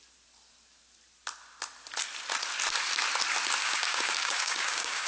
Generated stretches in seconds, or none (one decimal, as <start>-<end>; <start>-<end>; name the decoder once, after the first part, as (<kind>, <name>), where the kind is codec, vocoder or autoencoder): 3.6-5.1 (codec, DAC)